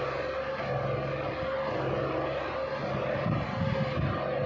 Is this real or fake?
real